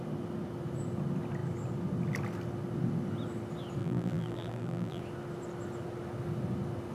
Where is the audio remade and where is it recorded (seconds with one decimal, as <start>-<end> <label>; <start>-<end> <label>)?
0.0-3.8 recorded; 3.8-5.0 remade; 5.0-6.9 recorded